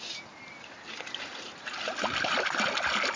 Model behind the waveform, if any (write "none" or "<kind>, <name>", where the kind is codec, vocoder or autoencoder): none